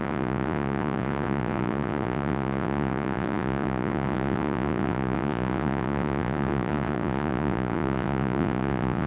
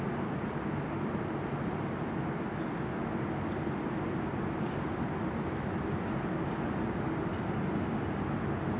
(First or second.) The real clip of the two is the second